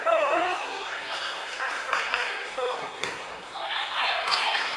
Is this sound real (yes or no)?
no